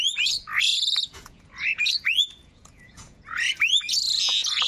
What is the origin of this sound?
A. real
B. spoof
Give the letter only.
B